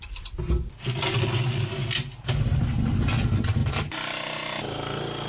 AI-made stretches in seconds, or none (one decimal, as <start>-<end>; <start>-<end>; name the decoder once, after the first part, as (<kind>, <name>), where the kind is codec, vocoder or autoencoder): none